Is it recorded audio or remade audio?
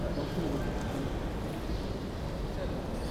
recorded